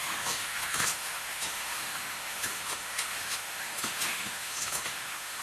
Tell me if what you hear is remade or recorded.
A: remade